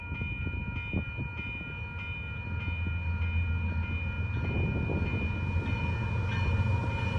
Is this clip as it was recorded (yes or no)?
yes